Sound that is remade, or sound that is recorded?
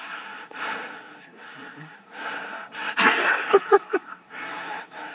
remade